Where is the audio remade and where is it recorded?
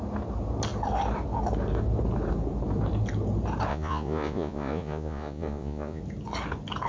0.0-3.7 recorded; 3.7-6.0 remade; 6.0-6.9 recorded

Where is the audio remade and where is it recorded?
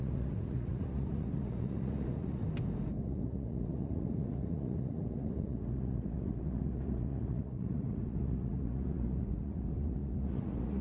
0.0-2.4 remade; 2.4-3.0 recorded; 3.0-10.8 remade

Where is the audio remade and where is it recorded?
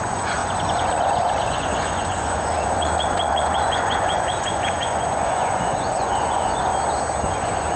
0.0-6.7 remade; 6.7-7.2 recorded; 7.2-7.8 remade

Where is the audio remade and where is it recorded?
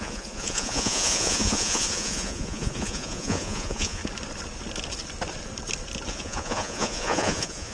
0.0-4.0 remade; 4.0-6.1 recorded; 6.1-7.7 remade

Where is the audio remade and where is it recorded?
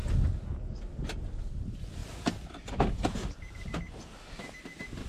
0.0-5.1 recorded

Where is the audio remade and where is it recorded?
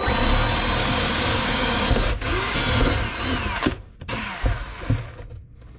0.0-0.8 recorded; 0.8-2.5 remade; 2.5-3.6 recorded; 3.6-4.3 remade; 4.3-5.8 recorded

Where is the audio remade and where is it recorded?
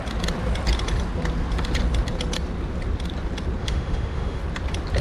0.0-3.6 recorded; 3.6-4.4 remade; 4.4-5.0 recorded